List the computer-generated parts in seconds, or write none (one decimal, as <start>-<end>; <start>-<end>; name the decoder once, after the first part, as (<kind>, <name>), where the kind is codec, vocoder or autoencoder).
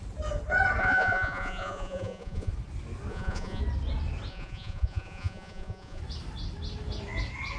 0.8-2.5 (vocoder, Vocos); 3.1-3.6; 4.3-6.0